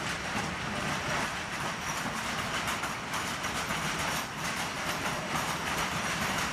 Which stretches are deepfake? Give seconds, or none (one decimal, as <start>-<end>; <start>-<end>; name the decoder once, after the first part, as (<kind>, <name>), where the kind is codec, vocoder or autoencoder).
0.0-3.7 (vocoder, BigVGAN v2); 4.4-6.5